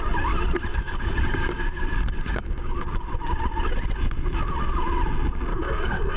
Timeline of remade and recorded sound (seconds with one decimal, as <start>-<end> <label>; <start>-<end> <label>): 0.0-0.7 recorded; 0.7-3.1 remade; 3.1-5.5 recorded; 5.5-6.2 remade